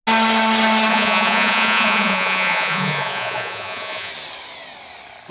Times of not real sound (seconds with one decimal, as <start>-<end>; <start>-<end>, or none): 0.9-4.1